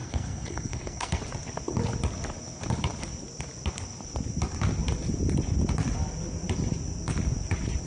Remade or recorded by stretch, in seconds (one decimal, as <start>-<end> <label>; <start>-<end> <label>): 0.0-1.2 remade; 1.2-7.9 recorded